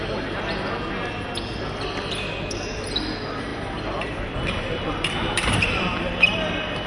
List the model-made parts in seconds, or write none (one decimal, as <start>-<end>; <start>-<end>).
3.5-6.9